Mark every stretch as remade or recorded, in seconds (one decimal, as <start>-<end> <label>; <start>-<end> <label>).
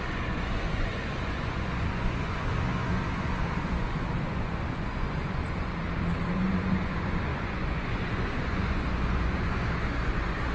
0.0-5.7 remade; 5.7-6.3 recorded; 6.3-10.5 remade